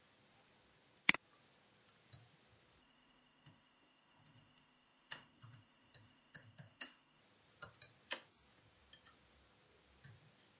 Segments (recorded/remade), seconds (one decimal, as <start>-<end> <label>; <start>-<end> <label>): 0.0-2.8 recorded; 2.8-7.2 remade; 7.2-10.6 recorded